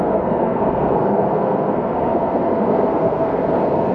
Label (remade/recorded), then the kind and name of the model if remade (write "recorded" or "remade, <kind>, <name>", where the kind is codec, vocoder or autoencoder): remade, codec, SNAC